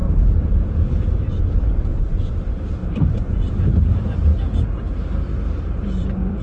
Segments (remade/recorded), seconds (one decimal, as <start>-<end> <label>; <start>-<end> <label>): 0.0-4.3 remade; 4.3-4.8 recorded; 4.8-6.4 remade